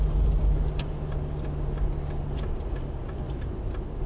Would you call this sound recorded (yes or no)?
yes